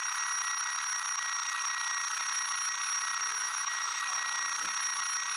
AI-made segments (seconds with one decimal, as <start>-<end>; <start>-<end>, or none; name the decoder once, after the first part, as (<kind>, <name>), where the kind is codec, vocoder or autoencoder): 3.4-4.0 (autoencoder, DAC-VAE)